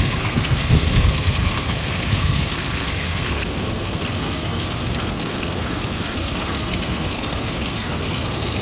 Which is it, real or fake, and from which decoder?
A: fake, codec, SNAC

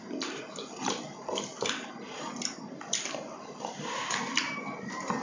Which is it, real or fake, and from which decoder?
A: real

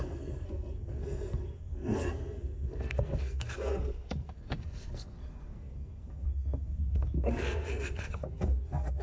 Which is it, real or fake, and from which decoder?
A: fake, codec, SNAC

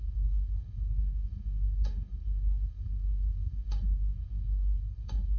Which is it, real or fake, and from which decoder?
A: fake, codec, SNAC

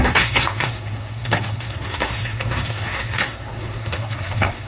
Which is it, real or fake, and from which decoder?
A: fake, codec, SNAC